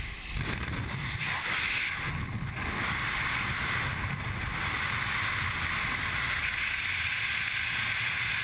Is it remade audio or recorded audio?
recorded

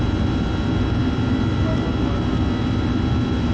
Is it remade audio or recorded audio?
recorded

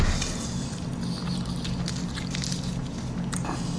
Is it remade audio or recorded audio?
recorded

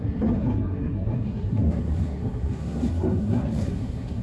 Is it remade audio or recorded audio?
remade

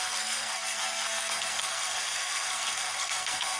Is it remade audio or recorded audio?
remade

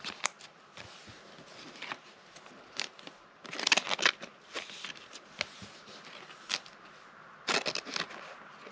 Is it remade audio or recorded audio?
recorded